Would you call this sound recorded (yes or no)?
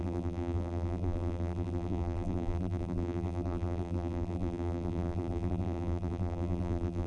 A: no